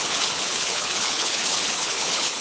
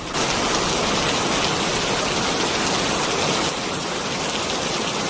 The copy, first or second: first